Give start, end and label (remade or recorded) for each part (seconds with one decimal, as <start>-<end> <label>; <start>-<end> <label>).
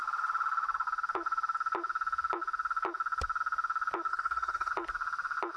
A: 0.0-4.1 recorded; 4.1-4.7 remade; 4.7-5.6 recorded